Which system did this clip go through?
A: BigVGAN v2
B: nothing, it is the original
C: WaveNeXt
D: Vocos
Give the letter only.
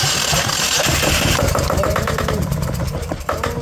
A